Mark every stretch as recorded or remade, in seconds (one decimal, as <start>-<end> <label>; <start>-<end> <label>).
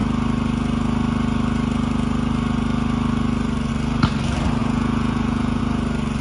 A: 0.0-4.6 recorded; 4.6-5.6 remade; 5.6-6.2 recorded